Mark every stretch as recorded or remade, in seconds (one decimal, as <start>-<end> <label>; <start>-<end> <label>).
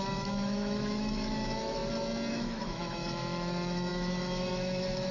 0.0-1.8 remade; 1.8-2.3 recorded; 2.3-5.1 remade